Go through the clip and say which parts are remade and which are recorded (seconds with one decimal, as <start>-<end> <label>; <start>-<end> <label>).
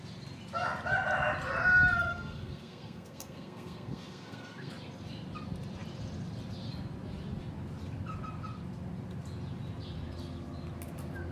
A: 0.0-2.1 recorded; 2.1-4.7 remade; 4.7-11.3 recorded